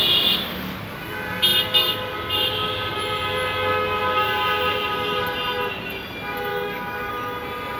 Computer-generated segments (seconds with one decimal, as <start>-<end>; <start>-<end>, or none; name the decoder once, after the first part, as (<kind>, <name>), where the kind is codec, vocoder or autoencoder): 6.5-7.1 (codec, DAC)